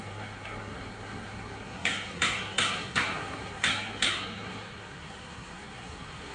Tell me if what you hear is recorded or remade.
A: remade